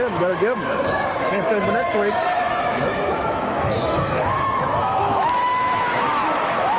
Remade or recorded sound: remade